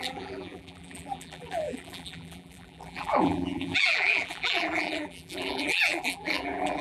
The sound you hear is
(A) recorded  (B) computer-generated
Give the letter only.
B